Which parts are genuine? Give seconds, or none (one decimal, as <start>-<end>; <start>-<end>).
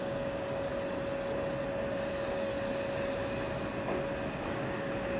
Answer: 0.7-2.1; 2.5-4.5